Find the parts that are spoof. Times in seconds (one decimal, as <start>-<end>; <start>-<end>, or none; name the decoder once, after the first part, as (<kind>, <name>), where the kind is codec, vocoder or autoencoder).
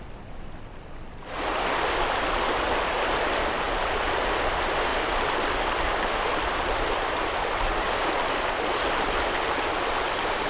none